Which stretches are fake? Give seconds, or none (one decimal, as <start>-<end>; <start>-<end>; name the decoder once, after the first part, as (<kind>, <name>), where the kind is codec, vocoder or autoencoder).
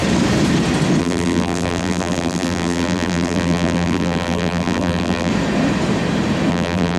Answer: 1.0-5.3 (vocoder, BigVGAN v2); 6.5-7.0